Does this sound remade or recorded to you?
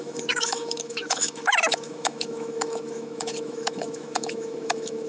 remade